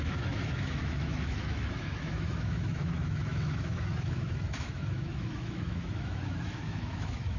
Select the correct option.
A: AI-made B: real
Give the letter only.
A